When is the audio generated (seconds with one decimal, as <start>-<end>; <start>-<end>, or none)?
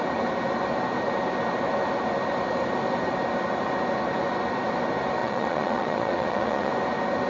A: 5.2-6.7